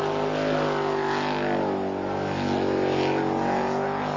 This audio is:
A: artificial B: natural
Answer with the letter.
B